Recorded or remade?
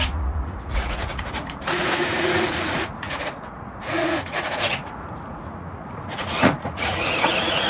remade